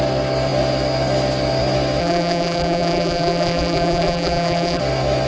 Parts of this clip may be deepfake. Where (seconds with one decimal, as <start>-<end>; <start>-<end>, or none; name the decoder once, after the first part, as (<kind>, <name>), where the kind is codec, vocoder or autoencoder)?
2.0-4.8 (vocoder, BigVGAN v2)